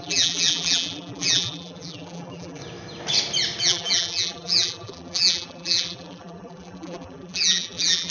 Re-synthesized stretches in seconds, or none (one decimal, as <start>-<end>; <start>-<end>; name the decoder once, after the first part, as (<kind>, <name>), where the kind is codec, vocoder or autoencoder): 0.0-2.6 (vocoder, BigVGAN v2); 3.6-8.1